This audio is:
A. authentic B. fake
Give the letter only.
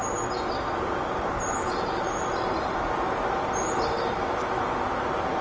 A